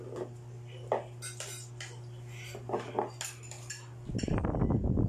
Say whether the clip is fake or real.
real